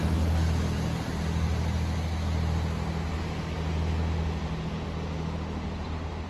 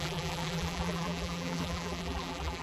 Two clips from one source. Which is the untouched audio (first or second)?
first